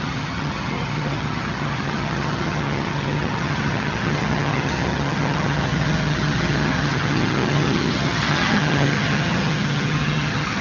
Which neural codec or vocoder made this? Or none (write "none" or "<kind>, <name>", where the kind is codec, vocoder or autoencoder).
vocoder, HiFi-GAN